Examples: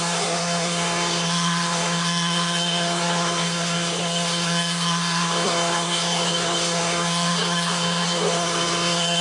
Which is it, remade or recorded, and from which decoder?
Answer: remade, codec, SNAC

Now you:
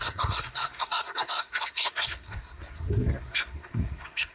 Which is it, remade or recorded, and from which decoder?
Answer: remade, codec, SNAC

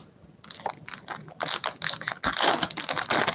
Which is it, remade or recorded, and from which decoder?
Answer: recorded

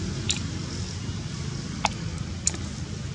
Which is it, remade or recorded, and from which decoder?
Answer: recorded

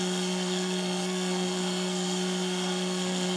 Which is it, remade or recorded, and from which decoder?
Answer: remade, codec, SNAC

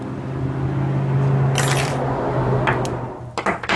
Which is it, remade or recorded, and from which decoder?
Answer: recorded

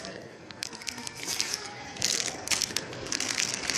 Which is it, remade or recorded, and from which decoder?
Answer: remade, codec, SNAC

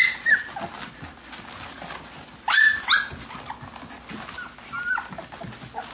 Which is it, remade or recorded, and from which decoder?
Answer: recorded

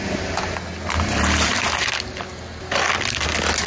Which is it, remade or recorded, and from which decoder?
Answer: recorded